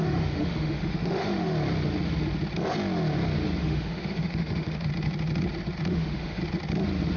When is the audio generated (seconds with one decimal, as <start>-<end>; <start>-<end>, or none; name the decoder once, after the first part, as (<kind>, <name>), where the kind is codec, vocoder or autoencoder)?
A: 0.0-1.5 (autoencoder, DAC-VAE); 3.6-4.9; 5.9-6.4